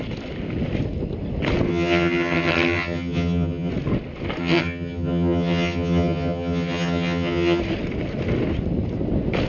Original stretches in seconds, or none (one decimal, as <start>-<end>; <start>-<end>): 0.0-1.7; 3.7-4.4; 7.6-9.5

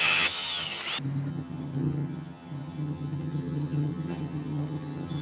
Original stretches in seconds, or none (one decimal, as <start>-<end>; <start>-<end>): 0.8-1.3

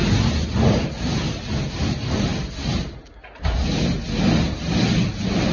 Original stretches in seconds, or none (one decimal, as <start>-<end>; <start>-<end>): 0.0-5.5

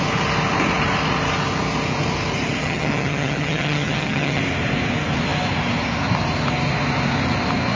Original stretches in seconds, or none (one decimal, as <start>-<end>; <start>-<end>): 0.0-2.6; 4.4-7.8

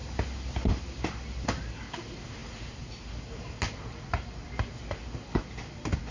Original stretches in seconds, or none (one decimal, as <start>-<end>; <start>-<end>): 0.0-6.1

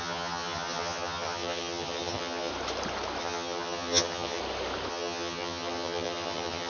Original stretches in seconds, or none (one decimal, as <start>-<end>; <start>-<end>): 2.5-3.2; 4.4-4.9

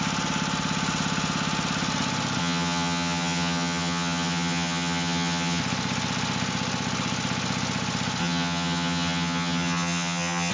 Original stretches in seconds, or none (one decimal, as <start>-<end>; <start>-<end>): 0.0-2.4; 5.6-8.2

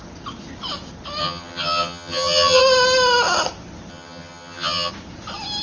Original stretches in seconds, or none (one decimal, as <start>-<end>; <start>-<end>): 0.0-1.2; 2.6-3.9; 4.9-5.6